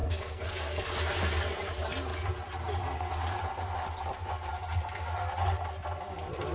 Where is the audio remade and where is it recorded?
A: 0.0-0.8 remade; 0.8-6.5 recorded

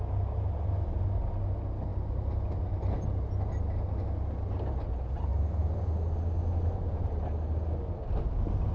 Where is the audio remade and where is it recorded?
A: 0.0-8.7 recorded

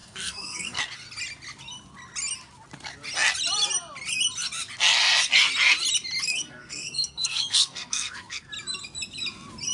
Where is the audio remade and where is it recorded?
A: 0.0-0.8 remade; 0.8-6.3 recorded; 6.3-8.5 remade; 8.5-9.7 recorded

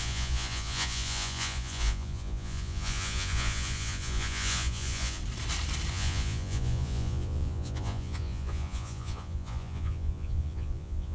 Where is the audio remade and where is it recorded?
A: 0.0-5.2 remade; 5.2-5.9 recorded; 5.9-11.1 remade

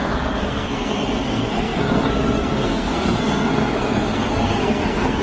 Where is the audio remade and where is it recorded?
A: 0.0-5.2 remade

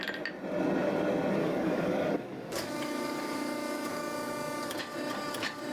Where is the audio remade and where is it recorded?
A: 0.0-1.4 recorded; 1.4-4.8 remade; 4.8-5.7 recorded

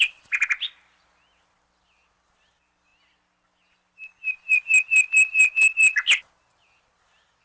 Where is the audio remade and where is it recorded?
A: 0.0-7.4 recorded

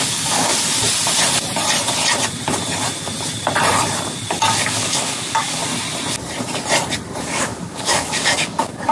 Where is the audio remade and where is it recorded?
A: 0.0-0.5 remade; 0.5-4.6 recorded; 4.6-5.6 remade; 5.6-7.2 recorded; 7.2-8.9 remade